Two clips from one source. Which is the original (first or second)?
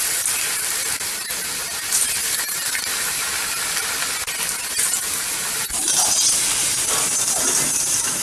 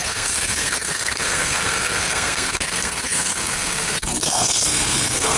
first